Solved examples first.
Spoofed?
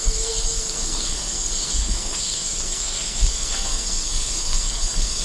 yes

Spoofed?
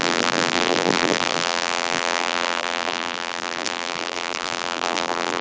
yes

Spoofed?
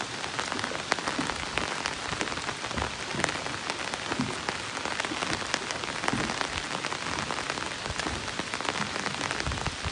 no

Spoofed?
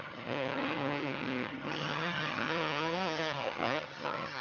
yes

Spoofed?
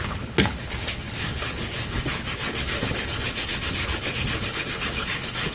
yes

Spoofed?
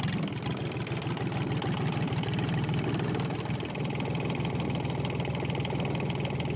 no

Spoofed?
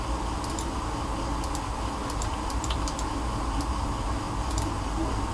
no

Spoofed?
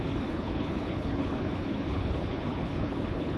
yes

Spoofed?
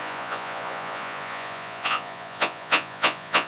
yes